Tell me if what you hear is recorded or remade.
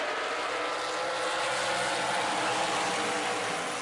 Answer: recorded